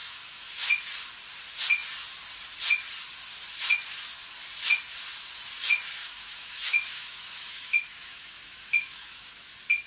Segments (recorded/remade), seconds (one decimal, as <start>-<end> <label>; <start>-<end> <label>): 0.0-0.5 remade; 0.5-6.0 recorded; 6.0-9.5 remade; 9.5-9.9 recorded